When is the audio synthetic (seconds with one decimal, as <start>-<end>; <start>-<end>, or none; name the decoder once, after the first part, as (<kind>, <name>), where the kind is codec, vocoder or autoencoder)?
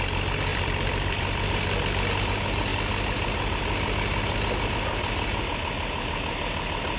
0.5-1.5 (vocoder, BigVGAN v2)